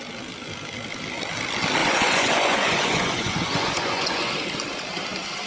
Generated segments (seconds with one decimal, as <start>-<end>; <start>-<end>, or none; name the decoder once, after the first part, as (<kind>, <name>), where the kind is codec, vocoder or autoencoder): 1.8-4.3 (vocoder, Vocos)